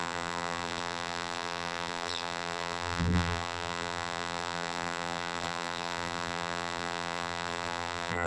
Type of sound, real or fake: fake